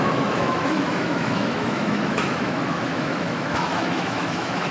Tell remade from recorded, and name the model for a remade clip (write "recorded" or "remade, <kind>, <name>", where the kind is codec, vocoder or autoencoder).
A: remade, autoencoder, DAC-VAE